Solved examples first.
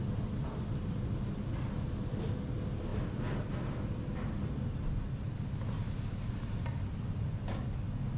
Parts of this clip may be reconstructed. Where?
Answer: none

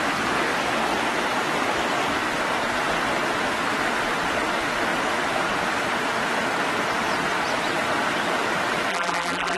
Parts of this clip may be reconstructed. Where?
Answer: 8.9-9.6

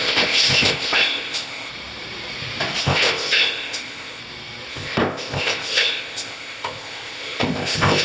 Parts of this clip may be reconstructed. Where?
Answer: 0.0-1.7; 2.8-4.2; 4.7-8.0

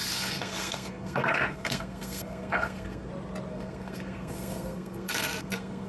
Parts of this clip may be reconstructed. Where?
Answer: 0.0-3.1; 3.5-5.9

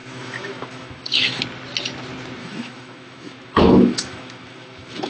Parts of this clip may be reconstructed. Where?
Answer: 0.0-1.4; 2.4-5.1